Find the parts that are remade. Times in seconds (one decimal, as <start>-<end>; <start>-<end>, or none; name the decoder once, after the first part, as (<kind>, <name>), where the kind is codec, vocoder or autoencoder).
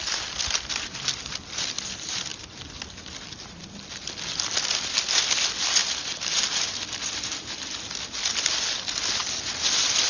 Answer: none